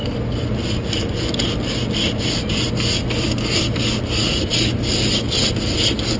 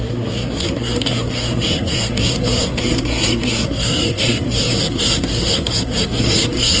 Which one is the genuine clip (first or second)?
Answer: first